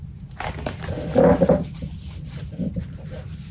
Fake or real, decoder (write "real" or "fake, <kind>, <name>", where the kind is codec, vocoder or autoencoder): real